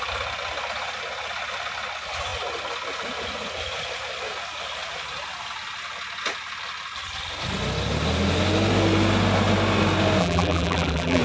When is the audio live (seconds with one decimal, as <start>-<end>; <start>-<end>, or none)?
0.0-10.2

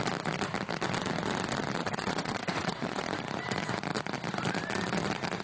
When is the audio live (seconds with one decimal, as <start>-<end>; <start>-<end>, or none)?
0.0-1.8; 3.0-5.4

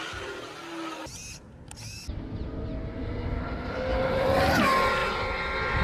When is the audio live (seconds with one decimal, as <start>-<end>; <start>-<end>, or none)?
0.0-3.9; 4.4-5.8

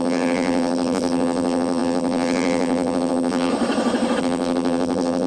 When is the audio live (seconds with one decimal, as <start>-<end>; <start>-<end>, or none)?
3.5-4.2

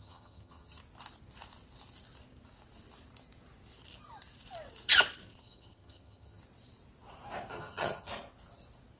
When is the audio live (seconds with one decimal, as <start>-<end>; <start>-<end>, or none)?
0.8-5.4; 6.4-7.5; 8.1-9.0

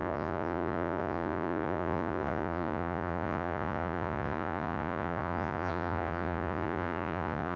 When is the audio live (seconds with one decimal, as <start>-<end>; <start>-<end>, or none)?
none

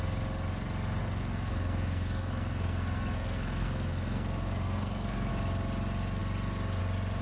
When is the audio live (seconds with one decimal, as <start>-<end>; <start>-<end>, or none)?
0.0-1.0; 5.3-7.2

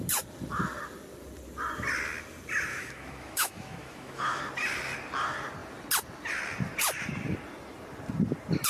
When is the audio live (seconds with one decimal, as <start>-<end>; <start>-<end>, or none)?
0.0-2.7; 4.4-8.7